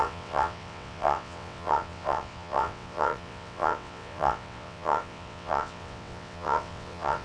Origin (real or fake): fake